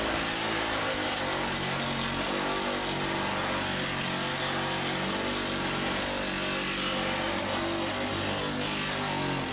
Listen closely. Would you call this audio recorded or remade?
recorded